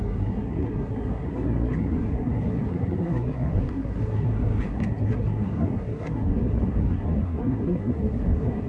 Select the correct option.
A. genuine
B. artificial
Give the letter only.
B